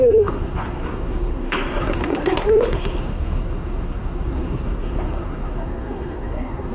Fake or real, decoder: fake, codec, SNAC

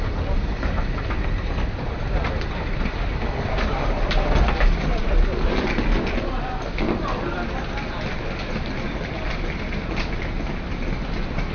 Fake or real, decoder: real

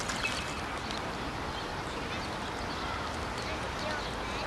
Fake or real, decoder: real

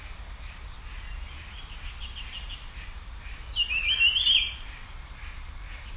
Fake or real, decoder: real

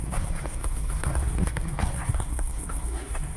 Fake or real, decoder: fake, codec, SNAC